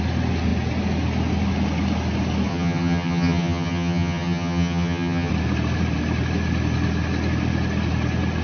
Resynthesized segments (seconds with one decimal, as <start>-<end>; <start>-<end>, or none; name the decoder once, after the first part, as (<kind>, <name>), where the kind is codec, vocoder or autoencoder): 2.5-5.3 (vocoder, HiFi-GAN)